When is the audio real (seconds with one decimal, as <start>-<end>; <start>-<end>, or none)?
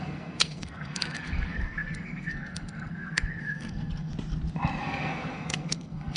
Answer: 4.1-4.8